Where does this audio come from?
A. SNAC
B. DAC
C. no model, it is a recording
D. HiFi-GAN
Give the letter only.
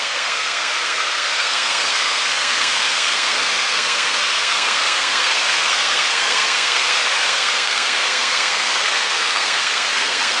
A